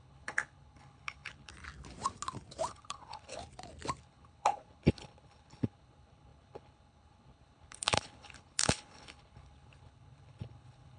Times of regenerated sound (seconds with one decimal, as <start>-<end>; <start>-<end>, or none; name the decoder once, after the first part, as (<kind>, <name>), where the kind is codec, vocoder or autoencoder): 0.0-1.5 (codec, HILCodec); 2.7-3.4; 4.0-11.0